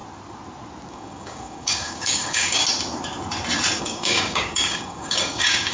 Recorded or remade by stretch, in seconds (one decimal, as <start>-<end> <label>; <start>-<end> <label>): 0.0-0.9 recorded; 0.9-2.6 remade; 2.6-3.8 recorded; 3.8-5.7 remade